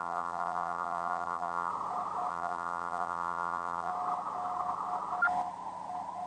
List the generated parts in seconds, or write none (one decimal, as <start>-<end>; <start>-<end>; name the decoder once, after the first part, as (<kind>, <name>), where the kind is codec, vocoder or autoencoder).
0.0-1.7 (vocoder, BigVGAN v2); 2.3-3.9